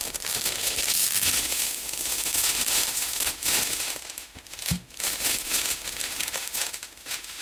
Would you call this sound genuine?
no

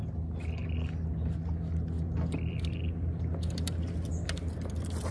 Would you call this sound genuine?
yes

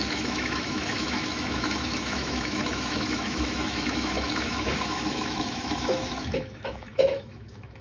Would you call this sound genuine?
no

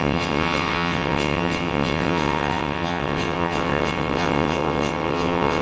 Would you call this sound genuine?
no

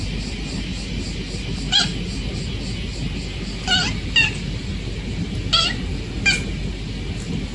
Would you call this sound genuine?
yes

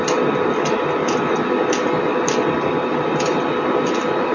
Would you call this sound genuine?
yes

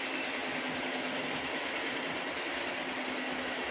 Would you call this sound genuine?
yes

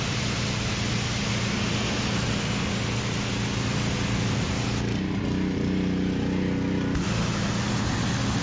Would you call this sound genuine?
yes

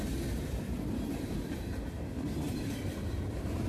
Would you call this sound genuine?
no